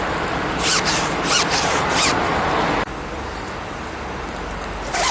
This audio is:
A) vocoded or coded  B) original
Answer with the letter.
B